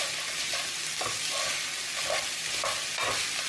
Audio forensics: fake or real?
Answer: real